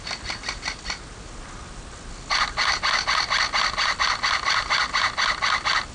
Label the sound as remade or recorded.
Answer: recorded